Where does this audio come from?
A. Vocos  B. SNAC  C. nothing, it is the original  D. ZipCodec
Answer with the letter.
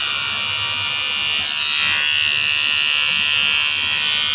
C